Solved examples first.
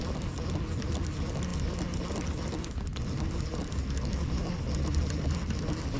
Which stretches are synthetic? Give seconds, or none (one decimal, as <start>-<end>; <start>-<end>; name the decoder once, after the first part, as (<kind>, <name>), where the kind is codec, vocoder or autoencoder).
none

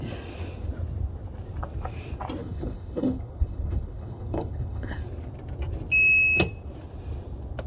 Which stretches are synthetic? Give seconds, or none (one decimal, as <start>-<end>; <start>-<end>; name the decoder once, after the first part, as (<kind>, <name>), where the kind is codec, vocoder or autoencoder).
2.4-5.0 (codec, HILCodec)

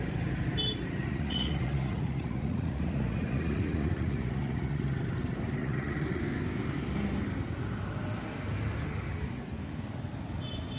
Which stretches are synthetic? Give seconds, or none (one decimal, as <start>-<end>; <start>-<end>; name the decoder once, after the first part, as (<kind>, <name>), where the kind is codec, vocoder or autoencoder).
1.0-5.0 (vocoder, Vocos); 5.6-6.2

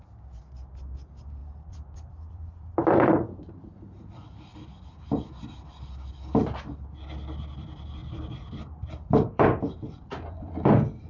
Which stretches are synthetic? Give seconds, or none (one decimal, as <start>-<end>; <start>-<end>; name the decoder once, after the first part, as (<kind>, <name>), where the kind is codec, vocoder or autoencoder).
1.4-3.5 (vocoder, BigVGAN v2); 8.0-10.5